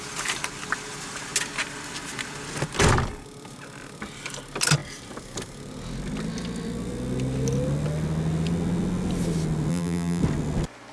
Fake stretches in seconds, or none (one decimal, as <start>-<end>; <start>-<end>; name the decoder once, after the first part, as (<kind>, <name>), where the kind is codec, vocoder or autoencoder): 9.7-10.2 (vocoder, BigVGAN v2)